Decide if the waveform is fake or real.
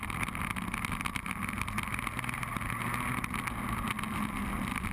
real